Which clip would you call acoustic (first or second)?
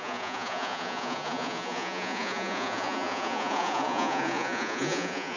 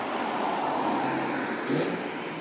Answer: second